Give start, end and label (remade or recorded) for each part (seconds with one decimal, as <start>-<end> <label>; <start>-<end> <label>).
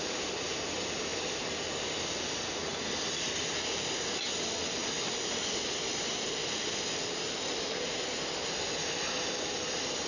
0.0-1.1 recorded; 1.1-1.7 remade; 1.7-2.7 recorded; 2.7-3.4 remade; 3.4-4.8 recorded; 4.8-8.3 remade; 8.3-10.1 recorded